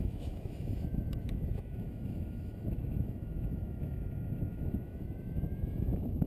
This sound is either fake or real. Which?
fake